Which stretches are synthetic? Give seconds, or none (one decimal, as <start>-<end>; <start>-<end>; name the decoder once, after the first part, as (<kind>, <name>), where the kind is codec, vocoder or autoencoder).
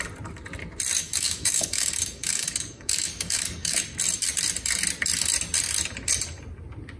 1.0-3.8 (codec, DAC)